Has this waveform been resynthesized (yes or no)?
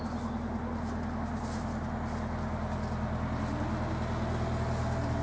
no